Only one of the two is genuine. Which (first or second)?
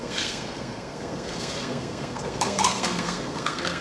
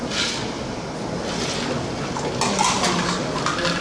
second